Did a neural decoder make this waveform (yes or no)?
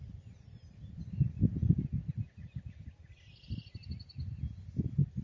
no